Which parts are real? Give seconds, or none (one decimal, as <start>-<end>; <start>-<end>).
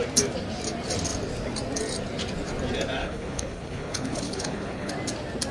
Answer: 0.0-3.0; 4.9-5.5